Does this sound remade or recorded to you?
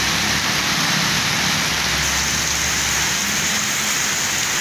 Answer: recorded